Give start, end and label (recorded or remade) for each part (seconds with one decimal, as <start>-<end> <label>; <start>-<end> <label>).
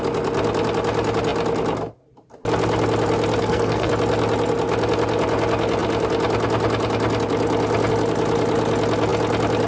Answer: 0.0-3.4 recorded; 3.4-3.9 remade; 3.9-9.7 recorded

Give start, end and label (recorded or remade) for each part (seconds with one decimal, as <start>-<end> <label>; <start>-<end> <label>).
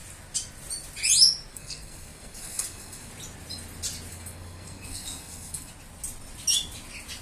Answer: 0.0-1.5 recorded; 1.5-3.1 remade; 3.1-4.1 recorded; 4.1-5.7 remade; 5.7-7.2 recorded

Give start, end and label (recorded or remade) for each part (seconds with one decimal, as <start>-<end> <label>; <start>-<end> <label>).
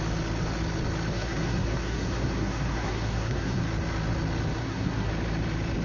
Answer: 0.0-1.1 recorded; 1.1-3.6 remade; 3.6-4.6 recorded; 4.6-5.1 remade; 5.1-5.8 recorded